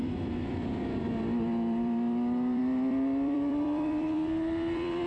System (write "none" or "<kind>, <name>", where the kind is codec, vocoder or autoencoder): vocoder, BigVGAN v2